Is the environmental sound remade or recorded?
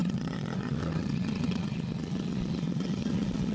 remade